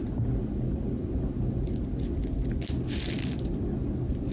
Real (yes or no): yes